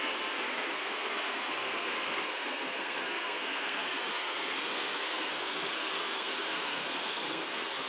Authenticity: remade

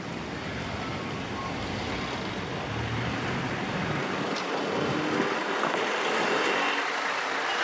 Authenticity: recorded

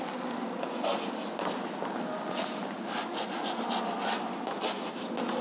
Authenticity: recorded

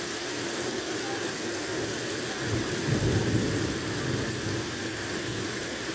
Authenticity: recorded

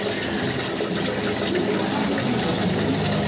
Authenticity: recorded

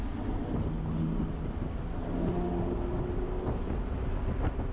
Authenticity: recorded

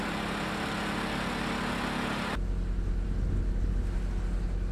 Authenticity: recorded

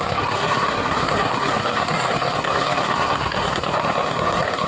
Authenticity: remade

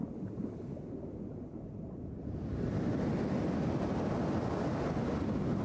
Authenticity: recorded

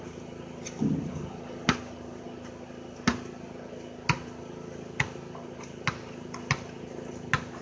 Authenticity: recorded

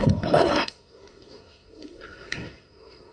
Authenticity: remade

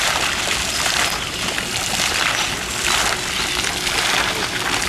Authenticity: recorded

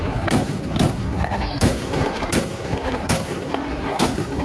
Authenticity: remade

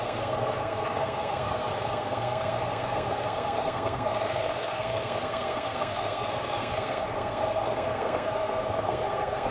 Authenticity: remade